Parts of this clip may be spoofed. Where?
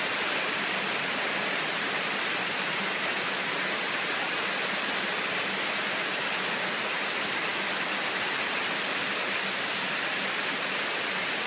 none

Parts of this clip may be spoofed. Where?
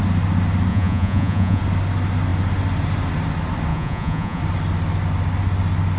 0.7-1.6 (vocoder, Vocos); 3.7-4.4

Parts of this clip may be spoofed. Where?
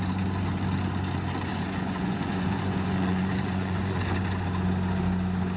1.5-4.0 (vocoder, Vocos)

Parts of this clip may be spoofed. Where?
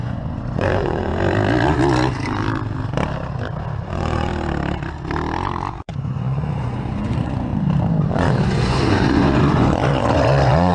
0.0-1.1 (vocoder, Vocos); 3.8-4.3; 5.7-7.5; 8.1-10.7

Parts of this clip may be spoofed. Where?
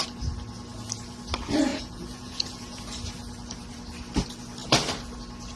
1.7-2.8 (vocoder, Vocos)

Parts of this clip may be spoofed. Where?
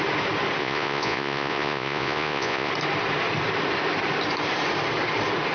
0.6-2.7 (vocoder, Vocos)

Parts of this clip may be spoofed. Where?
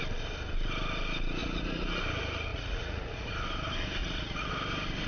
1.4-2.0 (vocoder, Vocos); 2.5-3.3; 4.0-4.5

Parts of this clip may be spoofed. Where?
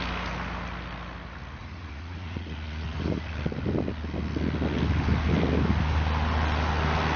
1.6-3.3 (vocoder, Vocos)